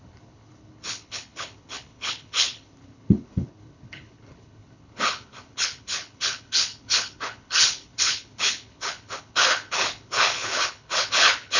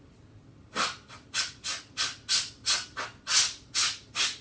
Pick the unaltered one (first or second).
second